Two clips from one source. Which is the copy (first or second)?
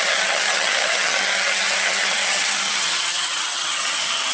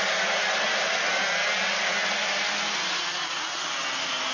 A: first